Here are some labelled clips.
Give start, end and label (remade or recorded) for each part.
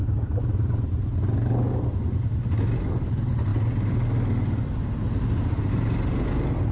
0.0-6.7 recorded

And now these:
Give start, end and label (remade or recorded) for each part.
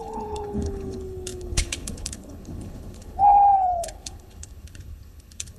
0.0-5.6 remade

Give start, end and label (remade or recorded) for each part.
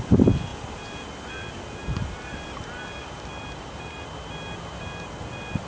0.0-5.7 recorded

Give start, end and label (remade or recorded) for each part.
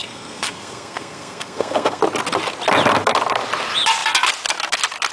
0.0-2.0 remade; 2.0-5.1 recorded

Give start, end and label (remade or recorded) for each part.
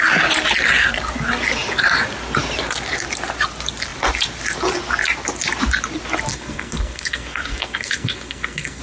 0.0-6.3 recorded; 6.3-8.8 remade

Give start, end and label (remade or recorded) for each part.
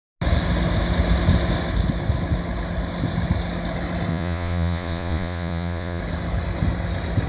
0.0-4.1 recorded; 4.1-6.0 remade; 6.0-7.3 recorded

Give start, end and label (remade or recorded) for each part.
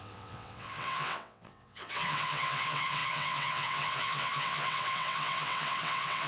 0.0-6.3 remade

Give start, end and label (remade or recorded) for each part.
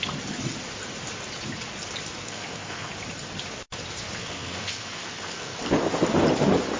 0.0-2.2 recorded; 2.2-2.9 remade; 2.9-4.2 recorded; 4.2-5.6 remade; 5.6-6.8 recorded